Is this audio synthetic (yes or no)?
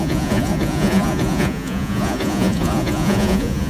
yes